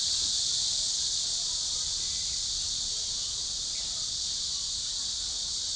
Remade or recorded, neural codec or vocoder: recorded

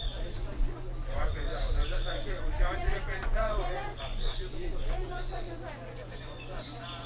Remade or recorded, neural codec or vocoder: remade, vocoder, Vocos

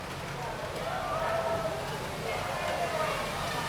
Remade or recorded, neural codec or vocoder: recorded